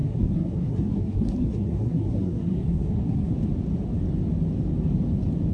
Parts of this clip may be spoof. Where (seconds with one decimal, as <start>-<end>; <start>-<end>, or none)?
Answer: 0.0-3.3